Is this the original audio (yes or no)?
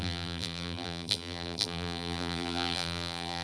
no